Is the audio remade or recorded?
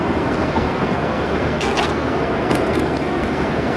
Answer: remade